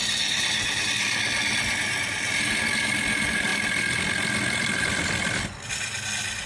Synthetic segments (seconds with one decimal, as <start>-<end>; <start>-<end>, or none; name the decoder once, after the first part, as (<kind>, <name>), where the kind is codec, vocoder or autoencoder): none